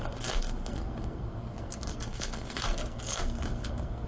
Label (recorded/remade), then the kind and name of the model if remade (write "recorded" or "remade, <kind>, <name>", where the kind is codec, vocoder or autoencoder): remade, codec, SNAC